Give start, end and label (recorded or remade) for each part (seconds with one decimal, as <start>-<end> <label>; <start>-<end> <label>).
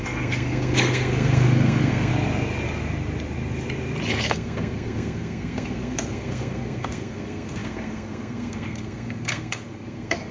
0.0-2.1 remade; 2.1-4.1 recorded; 4.1-10.3 remade